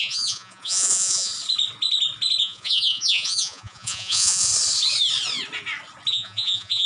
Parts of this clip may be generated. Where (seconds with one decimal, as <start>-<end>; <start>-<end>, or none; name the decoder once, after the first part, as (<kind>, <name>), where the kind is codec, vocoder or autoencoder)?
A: 0.0-1.3 (vocoder, Vocos); 2.4-4.5; 6.1-6.9